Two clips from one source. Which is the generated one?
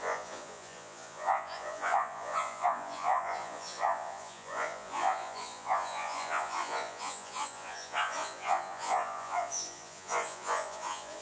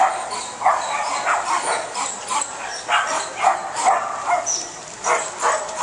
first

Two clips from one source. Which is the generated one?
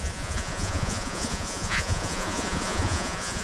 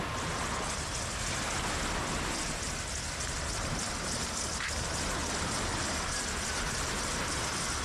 first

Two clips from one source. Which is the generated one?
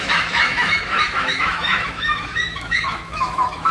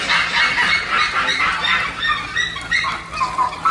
first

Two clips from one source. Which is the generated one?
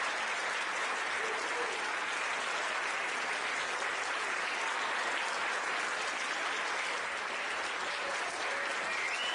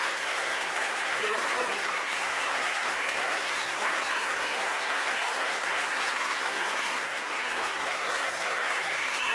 second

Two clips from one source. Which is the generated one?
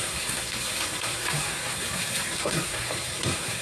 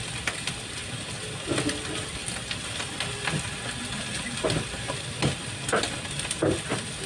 first